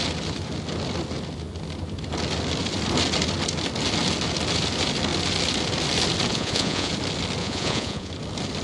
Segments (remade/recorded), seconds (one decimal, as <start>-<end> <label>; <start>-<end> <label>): 0.0-6.3 recorded; 6.3-6.9 remade; 6.9-7.4 recorded; 7.4-8.1 remade; 8.1-8.6 recorded